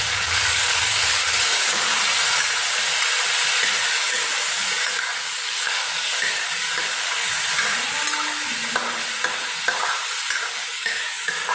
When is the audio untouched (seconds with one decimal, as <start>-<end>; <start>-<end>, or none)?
2.0-3.8; 7.4-10.5